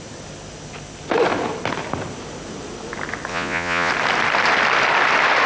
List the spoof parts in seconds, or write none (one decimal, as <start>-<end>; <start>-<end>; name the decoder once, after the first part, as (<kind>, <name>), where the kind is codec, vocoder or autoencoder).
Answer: 3.3-3.9 (vocoder, Vocos)